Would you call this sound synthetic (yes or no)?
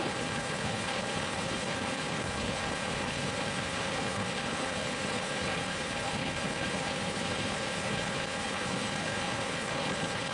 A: yes